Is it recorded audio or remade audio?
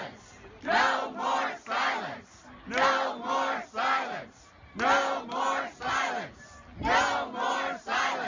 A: recorded